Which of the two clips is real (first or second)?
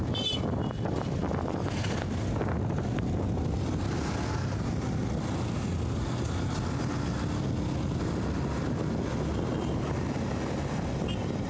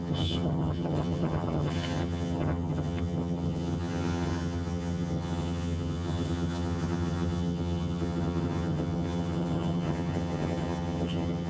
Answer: first